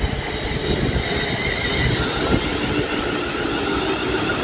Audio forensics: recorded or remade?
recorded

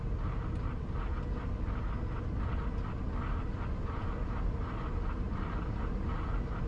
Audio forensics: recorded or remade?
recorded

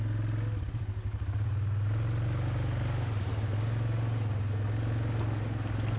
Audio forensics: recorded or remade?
recorded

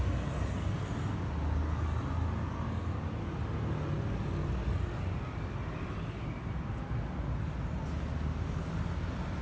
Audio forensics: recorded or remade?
recorded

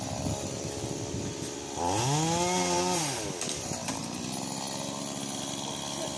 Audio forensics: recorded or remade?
recorded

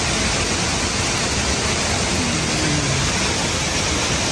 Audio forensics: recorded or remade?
recorded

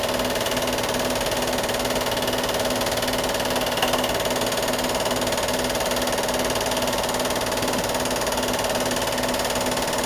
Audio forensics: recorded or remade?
recorded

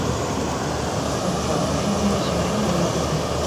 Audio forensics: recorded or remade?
recorded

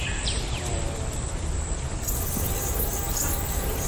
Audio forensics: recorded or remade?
remade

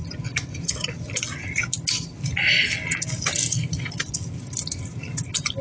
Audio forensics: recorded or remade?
recorded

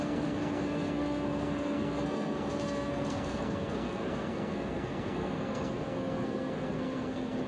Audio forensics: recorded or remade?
remade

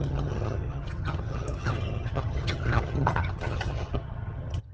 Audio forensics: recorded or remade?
remade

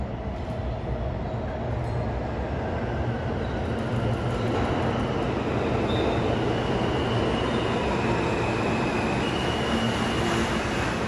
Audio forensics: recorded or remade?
recorded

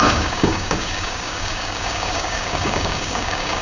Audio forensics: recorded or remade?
remade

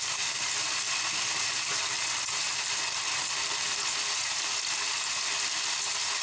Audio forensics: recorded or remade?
recorded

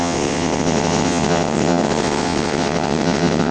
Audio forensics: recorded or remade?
remade